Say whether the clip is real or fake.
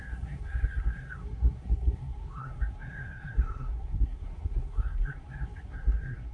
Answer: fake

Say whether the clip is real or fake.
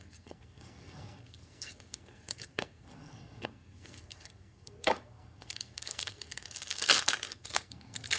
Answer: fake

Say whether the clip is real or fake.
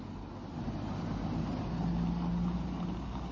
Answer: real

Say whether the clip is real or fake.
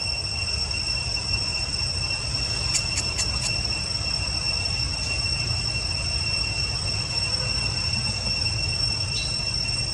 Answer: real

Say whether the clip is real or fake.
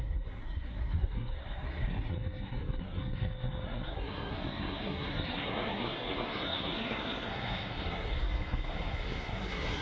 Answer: fake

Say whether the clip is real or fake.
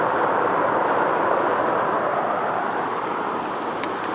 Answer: real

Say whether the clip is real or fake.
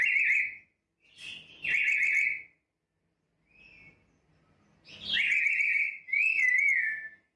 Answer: real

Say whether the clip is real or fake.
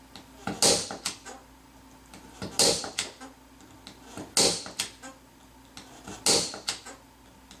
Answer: real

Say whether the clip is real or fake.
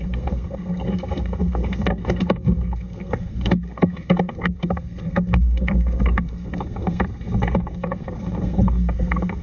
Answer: fake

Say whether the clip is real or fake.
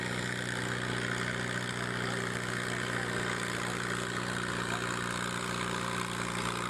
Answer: real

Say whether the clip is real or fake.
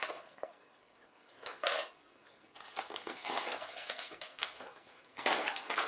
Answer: fake